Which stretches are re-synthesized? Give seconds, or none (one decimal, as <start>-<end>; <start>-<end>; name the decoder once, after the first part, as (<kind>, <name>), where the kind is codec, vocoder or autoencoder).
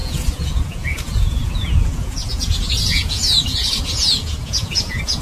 0.0-5.2 (vocoder, Vocos)